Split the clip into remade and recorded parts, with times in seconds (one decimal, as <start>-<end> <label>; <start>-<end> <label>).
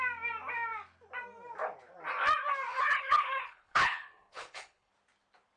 0.0-2.7 recorded; 2.7-4.9 remade; 4.9-5.6 recorded